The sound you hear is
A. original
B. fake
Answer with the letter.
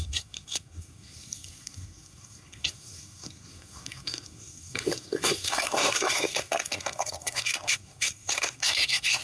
B